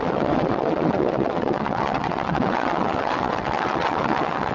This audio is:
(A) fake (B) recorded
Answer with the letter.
A